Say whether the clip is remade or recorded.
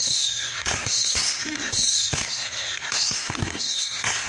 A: remade